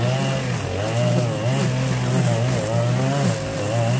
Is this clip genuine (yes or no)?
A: yes